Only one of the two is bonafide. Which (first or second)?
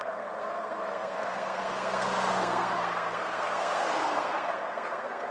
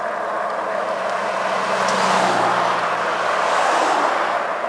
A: second